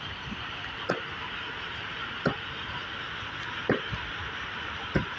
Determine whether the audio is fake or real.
fake